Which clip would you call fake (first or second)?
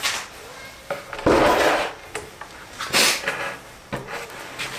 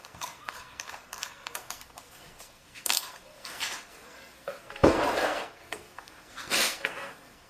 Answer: second